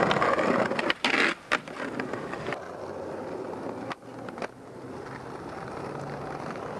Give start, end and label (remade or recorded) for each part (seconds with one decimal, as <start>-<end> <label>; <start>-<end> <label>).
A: 0.0-6.8 recorded